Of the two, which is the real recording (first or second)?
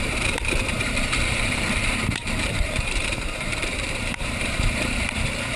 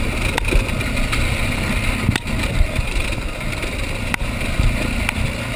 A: second